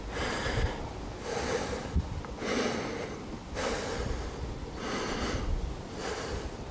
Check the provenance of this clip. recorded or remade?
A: recorded